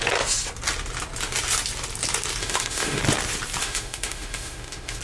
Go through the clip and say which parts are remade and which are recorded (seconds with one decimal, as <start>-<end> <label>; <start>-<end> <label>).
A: 0.0-2.4 recorded; 2.4-3.0 remade; 3.0-3.6 recorded; 3.6-5.0 remade